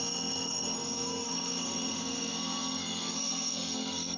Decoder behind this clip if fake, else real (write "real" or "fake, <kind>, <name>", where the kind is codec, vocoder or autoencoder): fake, codec, SNAC